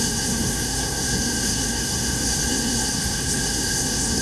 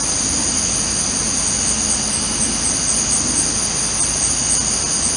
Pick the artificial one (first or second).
first